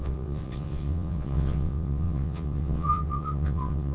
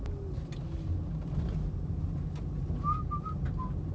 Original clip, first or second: second